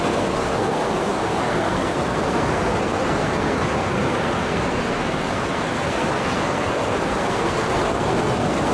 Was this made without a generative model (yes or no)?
no